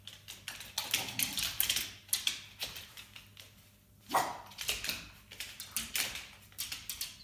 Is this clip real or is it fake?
real